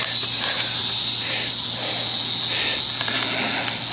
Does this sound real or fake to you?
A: real